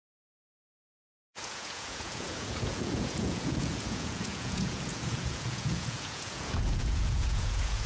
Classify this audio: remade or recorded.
remade